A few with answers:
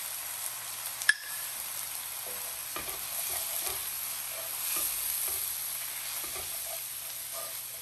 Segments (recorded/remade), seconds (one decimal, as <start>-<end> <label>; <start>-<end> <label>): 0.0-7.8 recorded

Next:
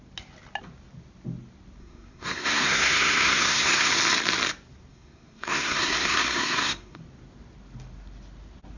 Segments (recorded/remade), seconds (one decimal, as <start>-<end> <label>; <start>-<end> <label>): 0.0-1.8 recorded; 1.8-3.9 remade; 3.9-4.9 recorded; 4.9-7.0 remade; 7.0-8.8 recorded

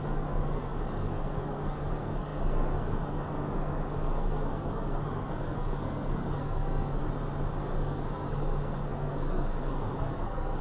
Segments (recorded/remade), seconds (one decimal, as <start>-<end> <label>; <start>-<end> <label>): 0.0-7.0 remade; 7.0-7.6 recorded; 7.6-10.6 remade

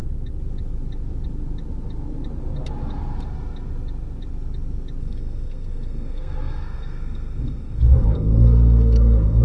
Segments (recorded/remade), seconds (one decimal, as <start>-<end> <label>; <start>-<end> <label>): 0.0-5.0 recorded; 5.0-9.4 remade

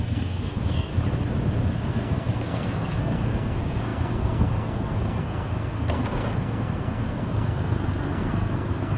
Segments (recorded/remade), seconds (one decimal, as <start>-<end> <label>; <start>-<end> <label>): 0.0-0.9 remade; 0.9-1.9 recorded; 1.9-9.0 remade

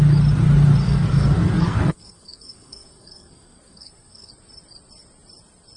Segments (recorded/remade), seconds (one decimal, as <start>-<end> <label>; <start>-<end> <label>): 0.0-0.8 recorded; 0.8-4.3 remade; 4.3-5.8 recorded

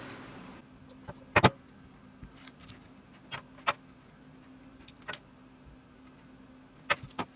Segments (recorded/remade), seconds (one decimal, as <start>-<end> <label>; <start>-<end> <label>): 0.0-7.4 recorded